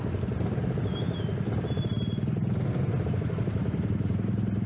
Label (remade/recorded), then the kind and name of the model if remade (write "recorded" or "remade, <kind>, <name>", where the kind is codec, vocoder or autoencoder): recorded